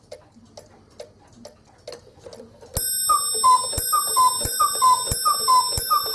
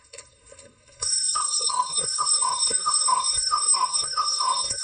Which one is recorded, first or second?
first